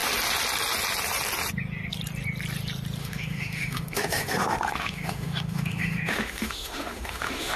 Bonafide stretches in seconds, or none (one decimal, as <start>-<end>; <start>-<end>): 0.0-3.0